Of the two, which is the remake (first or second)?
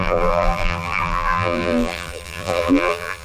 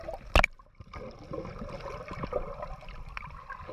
first